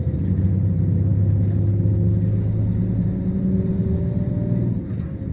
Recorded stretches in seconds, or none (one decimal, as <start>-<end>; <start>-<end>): 0.0-5.3